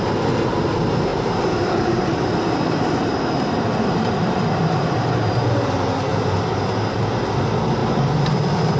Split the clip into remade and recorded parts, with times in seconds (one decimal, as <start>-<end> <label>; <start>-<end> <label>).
0.0-1.1 recorded; 1.1-5.2 remade; 5.2-8.8 recorded